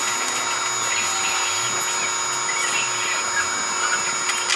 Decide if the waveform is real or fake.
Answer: real